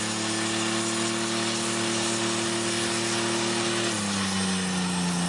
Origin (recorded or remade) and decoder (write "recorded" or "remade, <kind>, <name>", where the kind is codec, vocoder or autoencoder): recorded